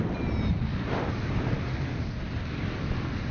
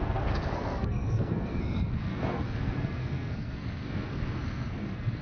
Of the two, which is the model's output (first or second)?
second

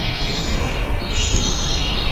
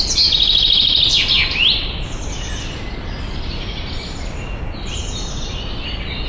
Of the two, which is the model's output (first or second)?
first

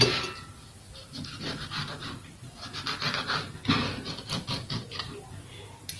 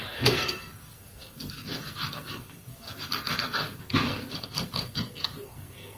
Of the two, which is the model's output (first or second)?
second